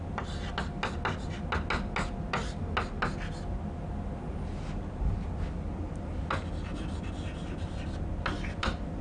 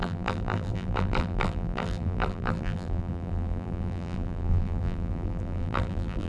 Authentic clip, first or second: first